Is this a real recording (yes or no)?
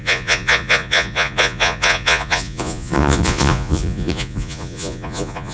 no